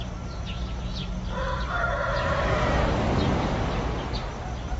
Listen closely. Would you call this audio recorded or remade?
recorded